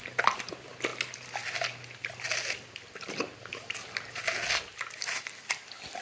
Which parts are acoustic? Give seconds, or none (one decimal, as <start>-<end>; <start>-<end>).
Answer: 0.0-6.0